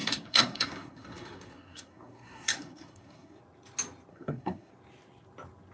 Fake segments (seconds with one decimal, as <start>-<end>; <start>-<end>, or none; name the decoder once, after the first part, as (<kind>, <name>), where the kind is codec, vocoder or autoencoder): 0.0-3.4 (codec, SNAC); 4.1-4.7